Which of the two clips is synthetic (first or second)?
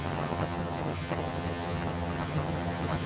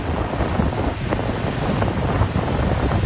first